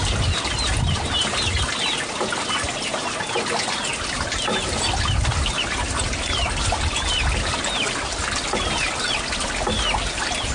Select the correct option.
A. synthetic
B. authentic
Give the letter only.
B